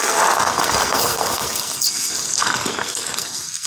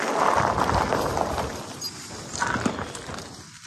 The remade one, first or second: first